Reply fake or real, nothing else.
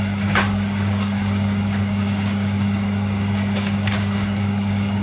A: fake